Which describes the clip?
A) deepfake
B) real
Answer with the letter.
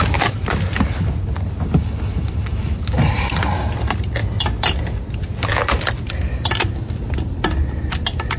B